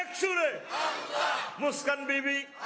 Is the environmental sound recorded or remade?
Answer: recorded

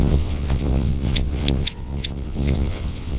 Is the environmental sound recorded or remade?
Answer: remade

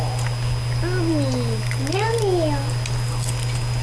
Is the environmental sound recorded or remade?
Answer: recorded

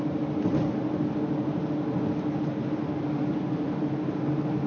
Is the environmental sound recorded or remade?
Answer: recorded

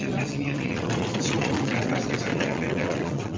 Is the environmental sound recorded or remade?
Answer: remade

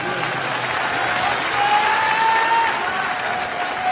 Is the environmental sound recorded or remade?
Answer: recorded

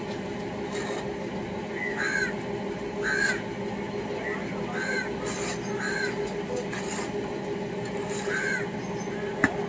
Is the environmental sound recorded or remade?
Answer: recorded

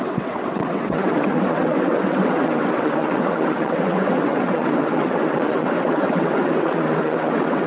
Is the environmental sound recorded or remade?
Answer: remade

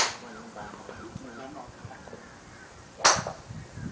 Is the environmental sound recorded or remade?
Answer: recorded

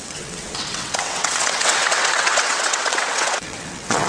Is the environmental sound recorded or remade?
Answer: remade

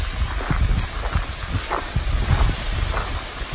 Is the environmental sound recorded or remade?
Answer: recorded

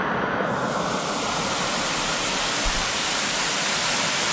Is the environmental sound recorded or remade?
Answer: recorded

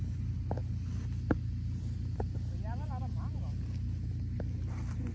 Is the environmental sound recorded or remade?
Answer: recorded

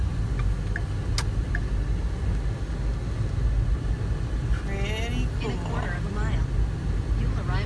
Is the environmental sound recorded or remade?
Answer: recorded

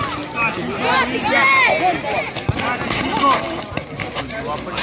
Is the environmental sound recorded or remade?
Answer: recorded